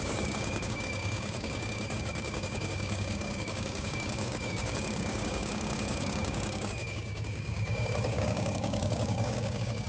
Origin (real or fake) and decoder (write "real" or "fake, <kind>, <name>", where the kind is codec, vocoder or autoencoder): fake, codec, DAC